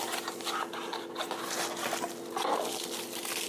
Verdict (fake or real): real